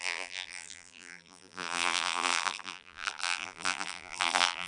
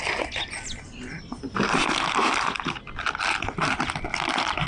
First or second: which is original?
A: second